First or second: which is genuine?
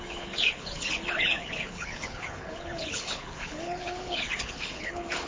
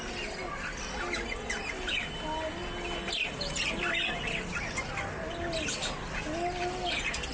second